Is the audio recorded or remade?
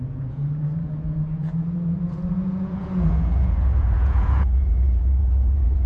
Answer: remade